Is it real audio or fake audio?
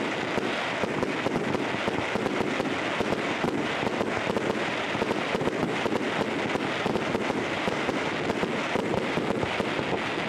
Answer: real